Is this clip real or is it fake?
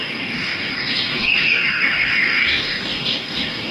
fake